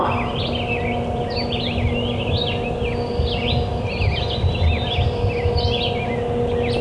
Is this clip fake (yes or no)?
no